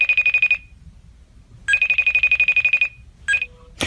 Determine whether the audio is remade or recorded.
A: recorded